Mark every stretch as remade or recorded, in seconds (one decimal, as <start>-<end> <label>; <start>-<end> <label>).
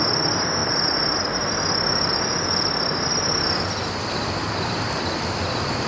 0.0-5.9 recorded